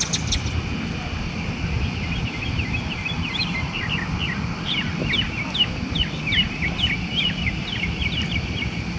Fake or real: real